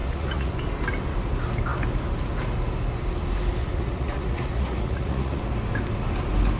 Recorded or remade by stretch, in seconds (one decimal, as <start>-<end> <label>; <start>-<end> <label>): 0.0-0.5 remade; 0.5-3.6 recorded; 3.6-5.4 remade; 5.4-6.6 recorded

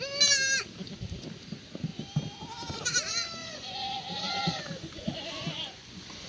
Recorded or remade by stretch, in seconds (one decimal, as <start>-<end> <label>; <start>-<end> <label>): 0.0-3.4 recorded; 3.4-6.3 remade

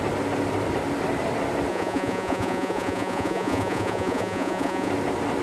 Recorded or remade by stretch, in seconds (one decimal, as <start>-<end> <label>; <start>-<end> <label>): 0.0-1.7 recorded; 1.7-4.9 remade; 4.9-5.4 recorded

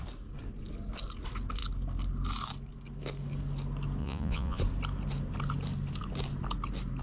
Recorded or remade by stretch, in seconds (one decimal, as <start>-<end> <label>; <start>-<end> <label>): 0.0-4.0 recorded; 4.0-4.6 remade; 4.6-7.0 recorded

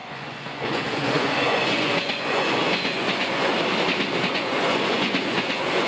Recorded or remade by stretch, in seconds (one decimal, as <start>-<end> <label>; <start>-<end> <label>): 0.0-3.5 remade; 3.5-4.3 recorded; 4.3-5.9 remade

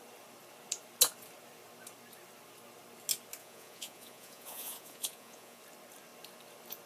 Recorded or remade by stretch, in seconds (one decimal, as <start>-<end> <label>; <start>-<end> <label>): 0.0-3.4 recorded; 3.4-5.6 remade; 5.6-6.9 recorded